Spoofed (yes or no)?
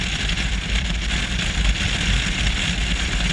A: no